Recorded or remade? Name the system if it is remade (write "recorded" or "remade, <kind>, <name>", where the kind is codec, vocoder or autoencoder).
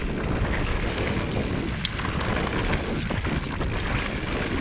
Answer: recorded